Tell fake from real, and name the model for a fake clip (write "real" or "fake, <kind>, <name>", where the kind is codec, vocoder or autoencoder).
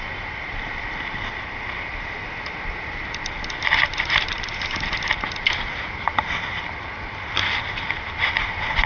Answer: real